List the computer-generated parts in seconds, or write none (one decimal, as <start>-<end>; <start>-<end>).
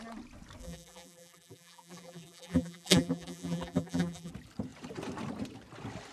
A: 0.6-4.3